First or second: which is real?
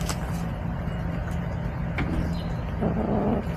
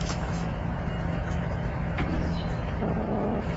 first